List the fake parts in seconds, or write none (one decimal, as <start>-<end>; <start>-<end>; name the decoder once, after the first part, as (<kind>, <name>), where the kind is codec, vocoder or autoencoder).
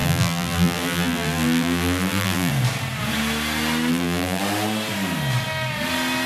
0.0-2.5 (vocoder, BigVGAN v2); 3.9-4.4